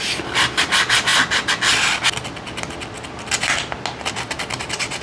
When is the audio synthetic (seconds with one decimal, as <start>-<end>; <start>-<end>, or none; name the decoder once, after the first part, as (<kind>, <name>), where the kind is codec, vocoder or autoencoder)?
none